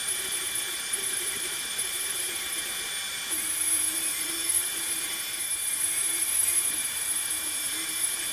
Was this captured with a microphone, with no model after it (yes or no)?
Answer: no